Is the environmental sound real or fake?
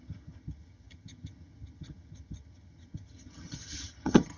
fake